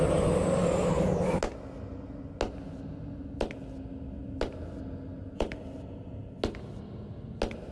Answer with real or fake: real